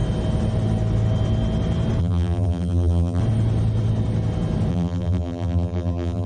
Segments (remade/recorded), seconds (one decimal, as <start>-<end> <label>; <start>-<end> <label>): 0.0-2.0 recorded; 2.0-3.2 remade; 3.2-4.7 recorded; 4.7-6.3 remade